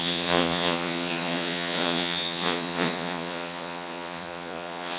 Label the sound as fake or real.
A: fake